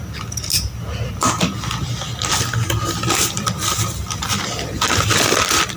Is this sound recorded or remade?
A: recorded